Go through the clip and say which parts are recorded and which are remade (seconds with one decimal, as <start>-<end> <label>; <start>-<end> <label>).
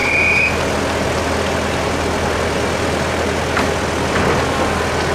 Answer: 0.0-5.1 recorded